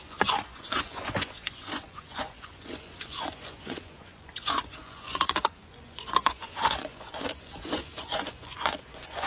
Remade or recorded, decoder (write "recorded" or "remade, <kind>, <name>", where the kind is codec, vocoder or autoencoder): remade, vocoder, Vocos